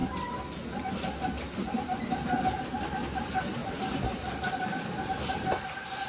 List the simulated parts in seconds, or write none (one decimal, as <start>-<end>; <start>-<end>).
3.6-5.3